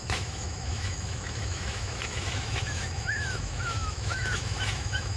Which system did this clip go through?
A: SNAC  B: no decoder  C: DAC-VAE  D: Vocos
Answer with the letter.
C